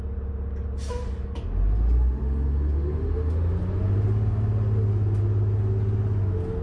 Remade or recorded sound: recorded